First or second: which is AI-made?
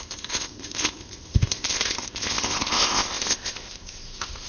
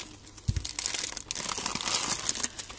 first